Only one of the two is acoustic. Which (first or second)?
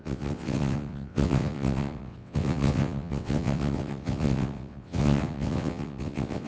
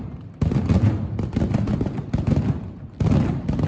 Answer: second